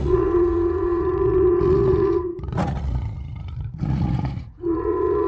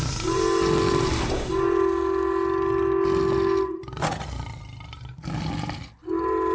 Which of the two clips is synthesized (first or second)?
first